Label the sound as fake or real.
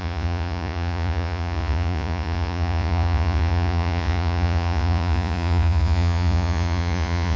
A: fake